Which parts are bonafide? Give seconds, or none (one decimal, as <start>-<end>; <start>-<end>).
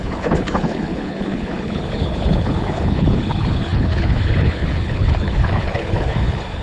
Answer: none